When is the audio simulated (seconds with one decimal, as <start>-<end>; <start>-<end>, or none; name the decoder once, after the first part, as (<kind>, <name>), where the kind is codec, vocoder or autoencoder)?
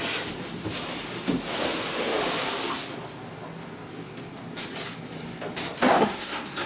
5.9-6.7 (codec, SNAC)